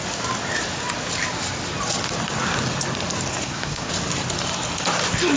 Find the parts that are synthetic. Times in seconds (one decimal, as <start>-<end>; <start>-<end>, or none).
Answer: 3.3-3.9